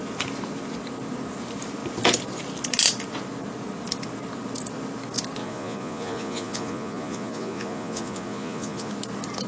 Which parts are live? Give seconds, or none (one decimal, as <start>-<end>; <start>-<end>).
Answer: 0.0-5.4; 8.9-9.5